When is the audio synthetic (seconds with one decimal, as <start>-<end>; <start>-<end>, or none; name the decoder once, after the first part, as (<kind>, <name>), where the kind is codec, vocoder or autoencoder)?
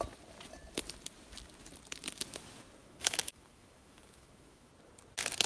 2.8-4.7 (autoencoder, DAC-VAE)